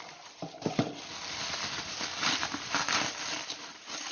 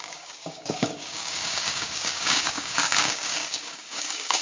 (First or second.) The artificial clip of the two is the second